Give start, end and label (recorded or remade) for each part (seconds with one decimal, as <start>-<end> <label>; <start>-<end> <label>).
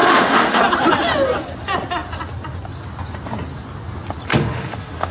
0.0-0.6 remade; 0.6-4.3 recorded; 4.3-5.1 remade